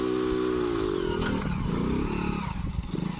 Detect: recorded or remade recorded